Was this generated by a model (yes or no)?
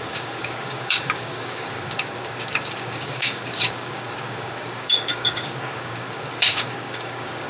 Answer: yes